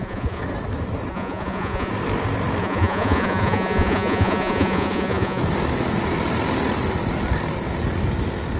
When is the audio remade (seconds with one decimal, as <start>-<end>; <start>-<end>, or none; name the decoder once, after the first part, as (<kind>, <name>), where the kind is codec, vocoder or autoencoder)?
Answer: 0.0-0.4 (vocoder, Vocos); 1.1-1.9; 2.6-5.4